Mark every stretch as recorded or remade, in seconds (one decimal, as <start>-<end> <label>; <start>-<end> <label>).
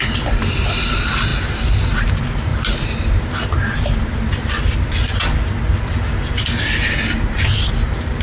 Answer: 0.0-8.2 recorded